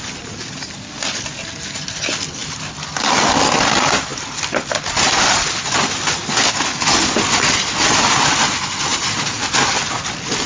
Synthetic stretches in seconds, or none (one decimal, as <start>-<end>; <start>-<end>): 2.4-3.3; 4.1-4.7